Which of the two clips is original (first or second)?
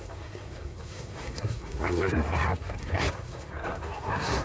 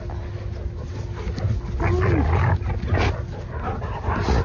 second